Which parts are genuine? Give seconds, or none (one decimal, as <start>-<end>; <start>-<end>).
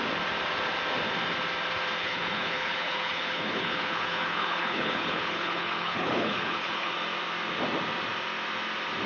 0.0-2.0; 6.9-9.1